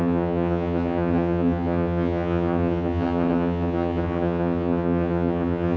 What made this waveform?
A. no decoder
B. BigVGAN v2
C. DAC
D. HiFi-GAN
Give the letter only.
D